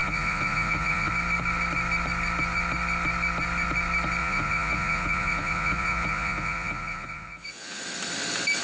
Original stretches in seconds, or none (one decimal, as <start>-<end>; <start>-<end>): 1.1-4.2; 7.8-8.6